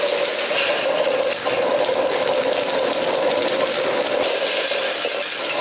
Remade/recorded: recorded